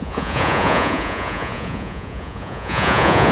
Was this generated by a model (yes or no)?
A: yes